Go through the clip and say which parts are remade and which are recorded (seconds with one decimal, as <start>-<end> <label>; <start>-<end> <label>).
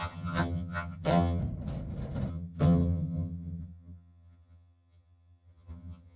0.0-1.4 remade; 1.4-2.3 recorded; 2.3-6.2 remade